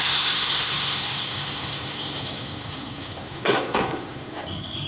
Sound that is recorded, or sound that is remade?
remade